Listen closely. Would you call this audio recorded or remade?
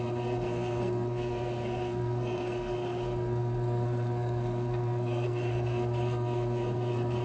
remade